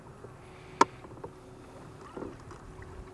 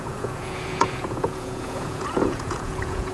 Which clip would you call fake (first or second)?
second